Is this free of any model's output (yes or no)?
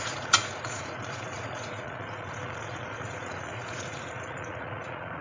no